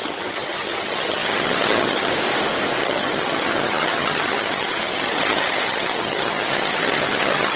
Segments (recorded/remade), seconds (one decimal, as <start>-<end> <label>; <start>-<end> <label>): 0.0-2.1 remade; 2.1-2.8 recorded; 2.8-7.6 remade